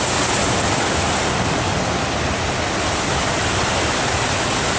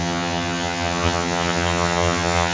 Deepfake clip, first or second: second